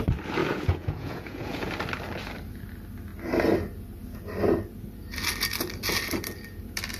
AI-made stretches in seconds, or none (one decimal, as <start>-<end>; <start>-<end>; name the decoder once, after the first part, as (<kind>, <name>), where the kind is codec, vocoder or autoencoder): 0.4-1.7 (vocoder, Vocos)